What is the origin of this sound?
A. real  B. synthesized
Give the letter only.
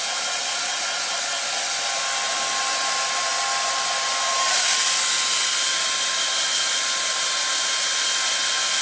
A